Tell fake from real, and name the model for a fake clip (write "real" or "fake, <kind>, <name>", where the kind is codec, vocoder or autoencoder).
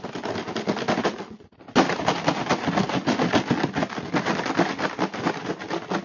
real